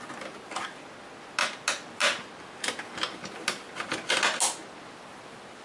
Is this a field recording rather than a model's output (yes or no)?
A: yes